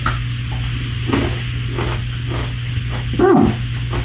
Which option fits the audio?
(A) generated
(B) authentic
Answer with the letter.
B